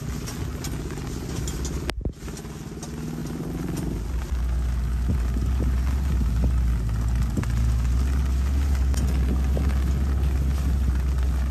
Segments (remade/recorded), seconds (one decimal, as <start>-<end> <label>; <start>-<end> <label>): 0.0-3.2 recorded; 3.2-4.2 remade; 4.2-11.5 recorded